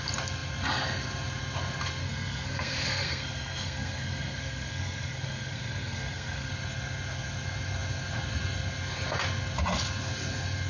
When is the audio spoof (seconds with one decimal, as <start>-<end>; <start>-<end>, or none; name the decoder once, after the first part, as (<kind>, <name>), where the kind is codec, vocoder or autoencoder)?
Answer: 2.0-6.5 (codec, SNAC)